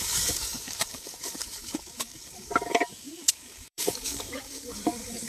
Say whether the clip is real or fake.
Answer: fake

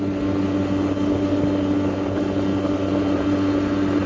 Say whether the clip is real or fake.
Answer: real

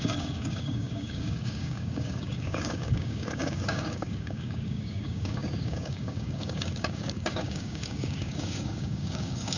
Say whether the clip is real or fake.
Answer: fake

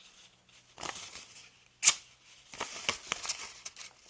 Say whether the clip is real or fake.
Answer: real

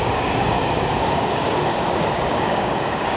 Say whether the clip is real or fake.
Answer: fake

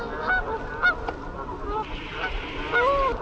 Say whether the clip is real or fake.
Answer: real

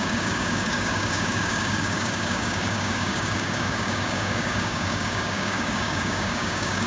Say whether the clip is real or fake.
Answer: fake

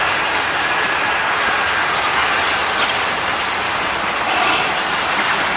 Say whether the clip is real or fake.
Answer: real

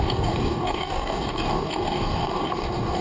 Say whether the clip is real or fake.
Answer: fake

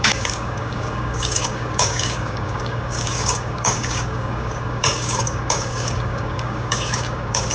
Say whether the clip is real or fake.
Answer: fake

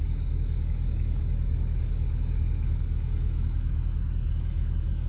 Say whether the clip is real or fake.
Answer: fake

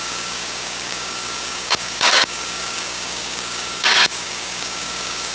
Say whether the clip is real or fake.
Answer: fake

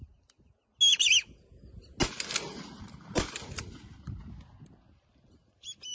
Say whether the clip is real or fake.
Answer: real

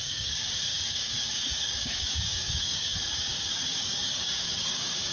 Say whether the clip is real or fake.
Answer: fake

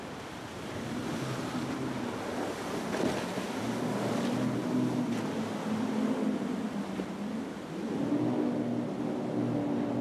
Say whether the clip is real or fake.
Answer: real